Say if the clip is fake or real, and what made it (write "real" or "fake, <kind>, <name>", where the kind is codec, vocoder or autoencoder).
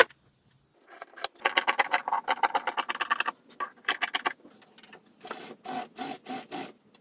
real